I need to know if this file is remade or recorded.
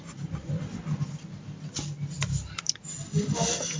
recorded